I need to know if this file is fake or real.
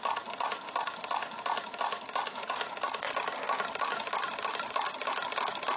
real